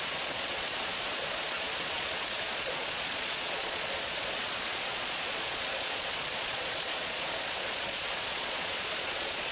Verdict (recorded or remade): remade